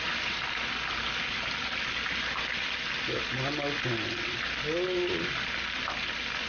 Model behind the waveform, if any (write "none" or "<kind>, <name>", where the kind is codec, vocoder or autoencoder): none